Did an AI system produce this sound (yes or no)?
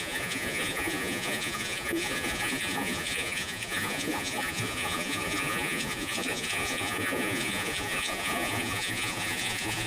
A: yes